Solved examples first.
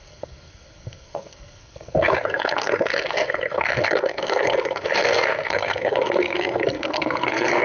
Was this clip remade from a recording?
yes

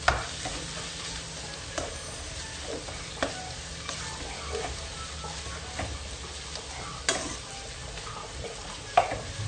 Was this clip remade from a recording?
no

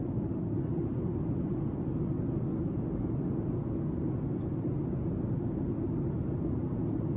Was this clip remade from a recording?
no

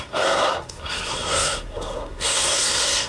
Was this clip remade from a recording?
yes